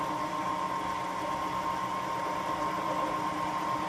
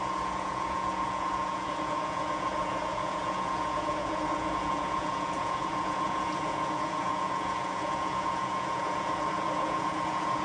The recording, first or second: first